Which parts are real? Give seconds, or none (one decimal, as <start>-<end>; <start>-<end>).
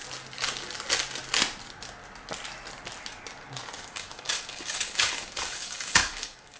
0.0-3.9